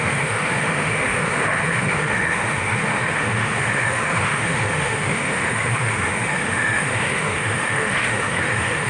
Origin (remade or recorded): remade